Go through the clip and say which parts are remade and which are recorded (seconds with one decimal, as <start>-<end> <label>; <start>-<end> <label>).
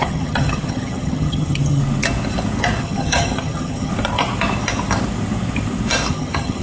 0.0-1.8 remade; 1.8-2.8 recorded; 2.8-3.9 remade; 3.9-6.1 recorded; 6.1-6.6 remade